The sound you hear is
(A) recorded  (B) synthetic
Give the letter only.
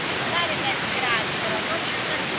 A